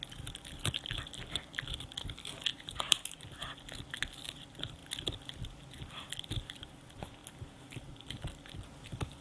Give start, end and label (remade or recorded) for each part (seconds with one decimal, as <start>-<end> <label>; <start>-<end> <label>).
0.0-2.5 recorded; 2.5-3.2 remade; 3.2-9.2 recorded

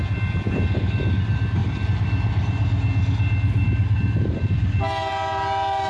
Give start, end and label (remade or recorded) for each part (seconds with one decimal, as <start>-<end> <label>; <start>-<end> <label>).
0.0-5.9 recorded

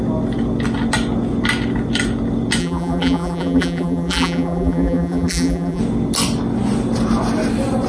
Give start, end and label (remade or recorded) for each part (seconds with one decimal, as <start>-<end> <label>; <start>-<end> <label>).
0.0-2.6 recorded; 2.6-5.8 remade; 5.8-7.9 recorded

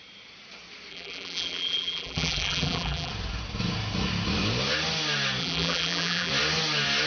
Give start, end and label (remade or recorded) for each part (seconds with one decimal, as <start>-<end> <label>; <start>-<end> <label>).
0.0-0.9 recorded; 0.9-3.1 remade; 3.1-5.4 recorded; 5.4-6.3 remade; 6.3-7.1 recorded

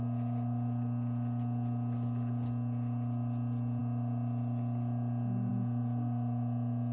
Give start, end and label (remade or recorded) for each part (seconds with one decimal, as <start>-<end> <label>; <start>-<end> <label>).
0.0-6.9 recorded